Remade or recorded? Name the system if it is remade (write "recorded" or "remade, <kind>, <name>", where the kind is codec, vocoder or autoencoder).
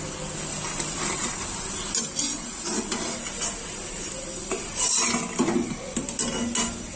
recorded